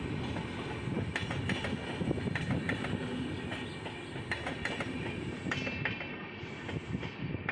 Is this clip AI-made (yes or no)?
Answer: no